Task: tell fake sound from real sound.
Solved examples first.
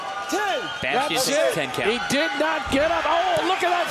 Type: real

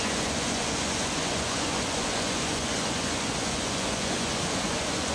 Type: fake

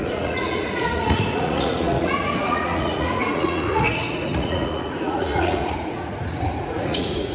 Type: fake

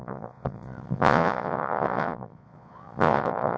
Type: fake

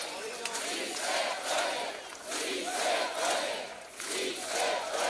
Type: fake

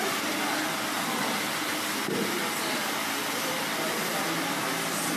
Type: real